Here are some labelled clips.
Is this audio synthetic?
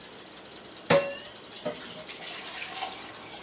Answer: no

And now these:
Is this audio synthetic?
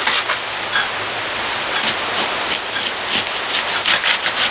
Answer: no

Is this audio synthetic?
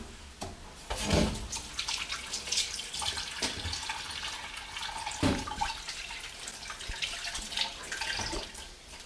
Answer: no